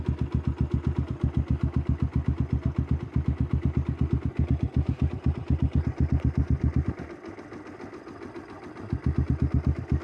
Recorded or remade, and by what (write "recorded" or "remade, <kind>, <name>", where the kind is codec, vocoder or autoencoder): recorded